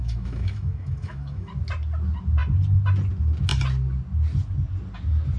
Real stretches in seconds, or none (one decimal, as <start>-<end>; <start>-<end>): 1.5-5.4